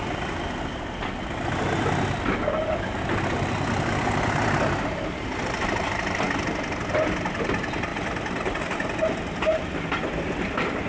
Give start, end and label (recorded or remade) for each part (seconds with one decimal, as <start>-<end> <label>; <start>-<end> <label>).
0.0-10.9 recorded